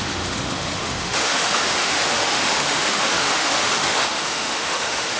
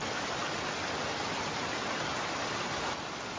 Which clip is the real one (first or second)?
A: second